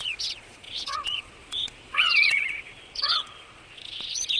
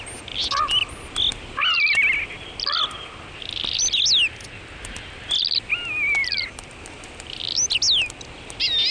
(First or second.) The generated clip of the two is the first